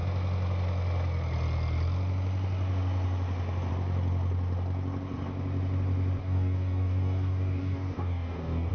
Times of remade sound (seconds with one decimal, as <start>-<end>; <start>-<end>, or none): 6.2-8.7